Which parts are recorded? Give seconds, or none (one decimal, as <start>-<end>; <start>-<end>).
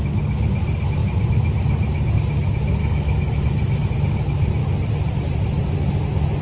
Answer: 0.0-2.8; 3.9-6.4